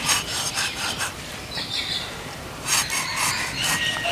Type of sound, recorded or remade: remade